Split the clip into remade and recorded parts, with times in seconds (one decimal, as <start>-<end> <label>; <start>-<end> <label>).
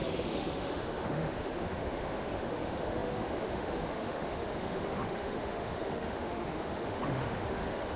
0.0-8.0 remade